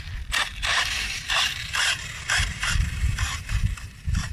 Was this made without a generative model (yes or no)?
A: no